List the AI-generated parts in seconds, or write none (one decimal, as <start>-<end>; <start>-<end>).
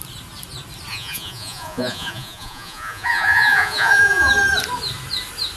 0.9-4.3